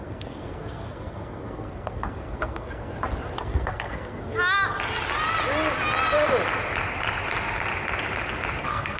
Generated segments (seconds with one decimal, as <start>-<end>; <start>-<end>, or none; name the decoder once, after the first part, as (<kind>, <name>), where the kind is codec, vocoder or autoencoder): 0.0-2.9 (codec, SNAC); 3.4-4.3; 8.6-9.0